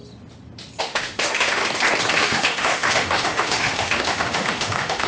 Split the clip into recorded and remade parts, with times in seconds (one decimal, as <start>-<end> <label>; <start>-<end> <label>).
0.0-0.8 recorded; 0.8-1.6 remade; 1.6-2.1 recorded; 2.1-5.1 remade